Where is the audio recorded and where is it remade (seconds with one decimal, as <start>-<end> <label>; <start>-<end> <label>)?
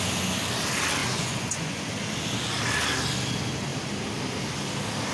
0.0-1.0 recorded; 1.0-1.9 remade; 1.9-5.1 recorded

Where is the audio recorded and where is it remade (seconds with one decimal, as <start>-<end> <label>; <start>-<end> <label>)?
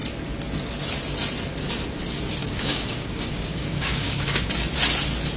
0.0-2.4 recorded; 2.4-4.5 remade; 4.5-5.4 recorded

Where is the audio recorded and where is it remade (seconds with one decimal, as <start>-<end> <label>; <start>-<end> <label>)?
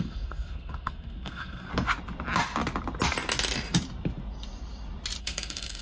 0.0-1.7 remade; 1.7-5.2 recorded; 5.2-5.8 remade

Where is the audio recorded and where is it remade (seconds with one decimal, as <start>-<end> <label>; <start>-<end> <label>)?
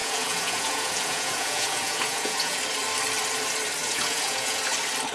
0.0-2.6 remade; 2.6-3.8 recorded; 3.8-4.6 remade; 4.6-5.1 recorded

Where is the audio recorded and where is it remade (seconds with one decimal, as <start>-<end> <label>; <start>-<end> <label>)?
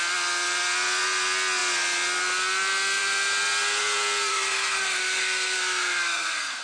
0.0-4.3 recorded; 4.3-6.6 remade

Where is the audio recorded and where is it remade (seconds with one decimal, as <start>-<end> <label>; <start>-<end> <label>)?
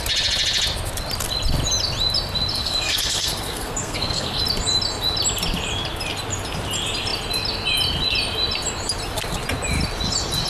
0.0-2.5 recorded; 2.5-4.4 remade; 4.4-10.5 recorded